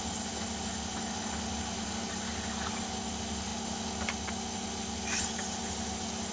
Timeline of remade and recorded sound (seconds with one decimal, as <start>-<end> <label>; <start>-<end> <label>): 0.0-6.3 recorded